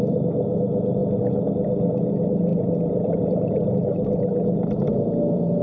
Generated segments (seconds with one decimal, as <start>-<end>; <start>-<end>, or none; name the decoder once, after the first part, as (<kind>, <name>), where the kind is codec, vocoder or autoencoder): 2.5-3.7 (vocoder, BigVGAN v2)